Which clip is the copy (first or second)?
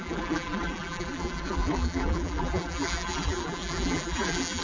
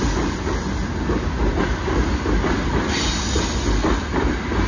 first